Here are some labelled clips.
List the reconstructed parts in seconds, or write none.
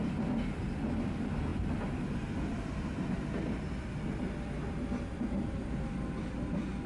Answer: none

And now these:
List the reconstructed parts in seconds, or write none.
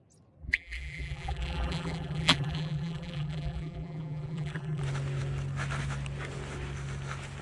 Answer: 0.4-4.8 (vocoder, BigVGAN v2)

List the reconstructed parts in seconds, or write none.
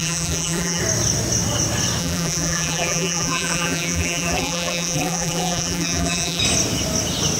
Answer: 0.0-0.8 (vocoder, BigVGAN v2); 2.0-6.4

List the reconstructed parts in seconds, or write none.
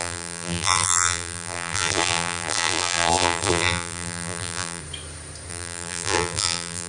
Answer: 0.0-4.8 (vocoder, BigVGAN v2); 5.5-6.9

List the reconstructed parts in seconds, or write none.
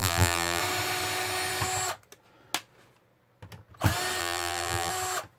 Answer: 0.0-0.6 (vocoder, BigVGAN v2); 4.2-4.9